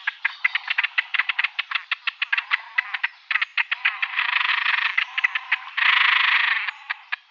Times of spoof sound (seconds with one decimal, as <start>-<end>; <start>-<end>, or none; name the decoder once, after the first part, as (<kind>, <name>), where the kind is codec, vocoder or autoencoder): 1.1-2.8 (vocoder, BigVGAN v2); 3.5-4.5